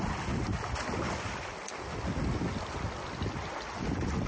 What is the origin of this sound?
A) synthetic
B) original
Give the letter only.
B